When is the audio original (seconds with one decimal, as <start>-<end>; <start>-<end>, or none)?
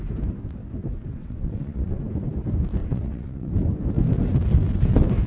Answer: 0.0-1.2; 2.0-2.8; 3.5-5.3